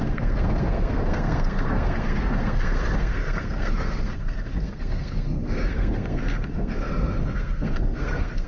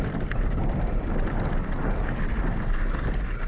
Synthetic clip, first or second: first